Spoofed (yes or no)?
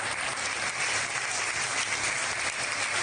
no